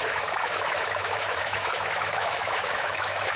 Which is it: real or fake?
fake